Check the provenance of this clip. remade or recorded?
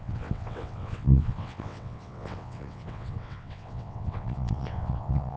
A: remade